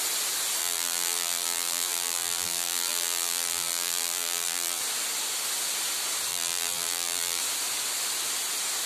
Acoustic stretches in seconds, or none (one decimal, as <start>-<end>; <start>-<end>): 0.0-0.6; 4.8-6.3; 7.4-8.9